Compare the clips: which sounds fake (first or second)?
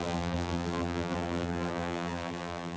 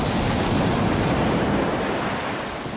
first